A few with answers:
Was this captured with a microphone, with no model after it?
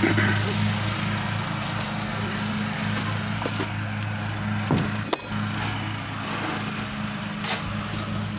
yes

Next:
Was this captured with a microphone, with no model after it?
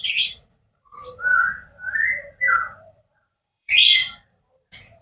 no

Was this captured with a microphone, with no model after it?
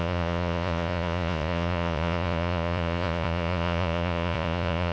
no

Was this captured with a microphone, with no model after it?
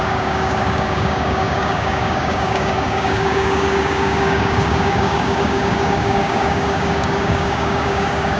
no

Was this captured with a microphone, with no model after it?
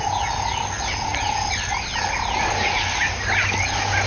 yes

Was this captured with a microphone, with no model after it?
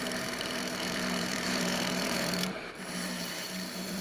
no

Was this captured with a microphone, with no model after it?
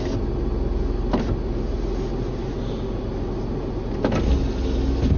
yes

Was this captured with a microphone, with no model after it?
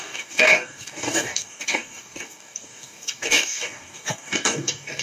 no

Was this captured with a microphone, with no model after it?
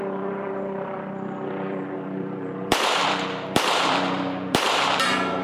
no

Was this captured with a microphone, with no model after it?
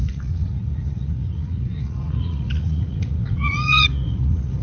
no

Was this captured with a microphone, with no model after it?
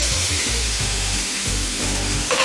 no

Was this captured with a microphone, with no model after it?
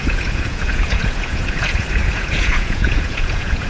no